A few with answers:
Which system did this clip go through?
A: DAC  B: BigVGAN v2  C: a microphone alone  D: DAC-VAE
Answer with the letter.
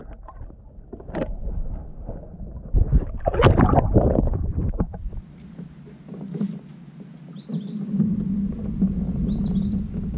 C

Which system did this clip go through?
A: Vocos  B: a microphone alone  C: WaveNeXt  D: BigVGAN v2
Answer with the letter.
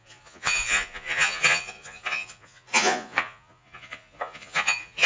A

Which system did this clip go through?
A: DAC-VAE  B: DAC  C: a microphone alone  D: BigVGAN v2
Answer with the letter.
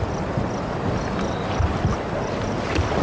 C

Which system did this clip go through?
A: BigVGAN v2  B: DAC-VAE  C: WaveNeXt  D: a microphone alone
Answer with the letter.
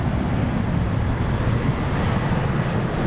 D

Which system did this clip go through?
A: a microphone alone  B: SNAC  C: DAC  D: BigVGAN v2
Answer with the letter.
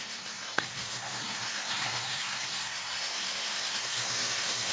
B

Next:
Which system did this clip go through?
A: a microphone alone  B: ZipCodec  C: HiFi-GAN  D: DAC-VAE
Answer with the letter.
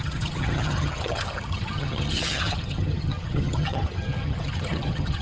C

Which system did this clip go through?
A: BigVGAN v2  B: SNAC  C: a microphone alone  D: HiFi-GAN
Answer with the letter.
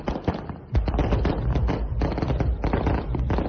A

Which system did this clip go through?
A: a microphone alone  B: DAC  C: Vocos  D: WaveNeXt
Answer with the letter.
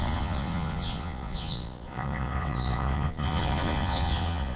C